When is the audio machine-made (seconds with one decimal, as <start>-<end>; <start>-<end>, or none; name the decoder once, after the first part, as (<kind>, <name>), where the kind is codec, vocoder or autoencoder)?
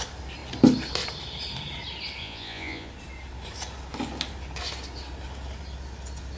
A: 2.2-2.9 (vocoder, Vocos)